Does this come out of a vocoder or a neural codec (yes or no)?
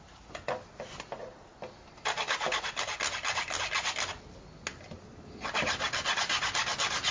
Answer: no